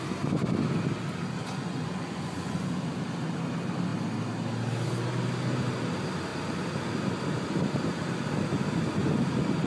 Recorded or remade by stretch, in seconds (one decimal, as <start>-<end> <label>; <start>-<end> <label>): 0.0-1.4 recorded; 1.4-2.7 remade; 2.7-9.7 recorded